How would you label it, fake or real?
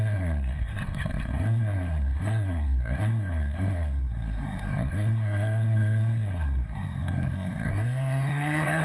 fake